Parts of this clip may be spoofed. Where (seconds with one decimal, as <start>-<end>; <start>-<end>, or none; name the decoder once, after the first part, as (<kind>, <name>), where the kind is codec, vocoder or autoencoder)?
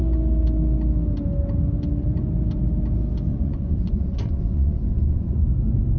3.3-5.4 (vocoder, Vocos)